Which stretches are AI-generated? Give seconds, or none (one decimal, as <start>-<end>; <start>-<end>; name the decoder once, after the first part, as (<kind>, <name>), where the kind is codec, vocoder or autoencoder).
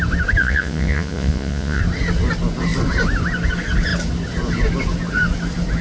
0.4-1.8 (vocoder, Vocos)